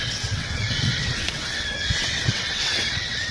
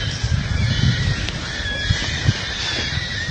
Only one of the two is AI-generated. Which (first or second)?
first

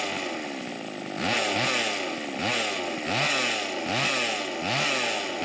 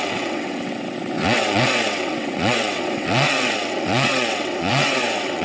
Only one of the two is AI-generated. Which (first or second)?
second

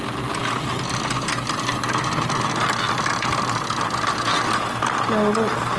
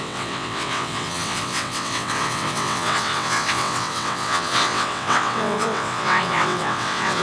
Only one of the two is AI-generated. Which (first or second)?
second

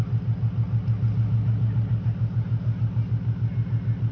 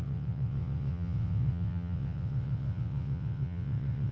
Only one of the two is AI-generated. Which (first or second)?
second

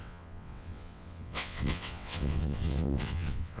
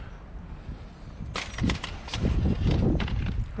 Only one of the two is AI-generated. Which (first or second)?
first